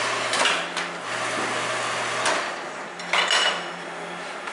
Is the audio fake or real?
real